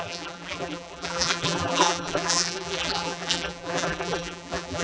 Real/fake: fake